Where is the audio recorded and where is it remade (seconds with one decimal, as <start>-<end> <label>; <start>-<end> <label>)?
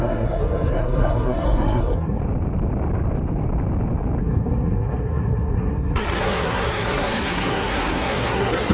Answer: 0.0-2.2 remade; 2.2-4.2 recorded; 4.2-8.7 remade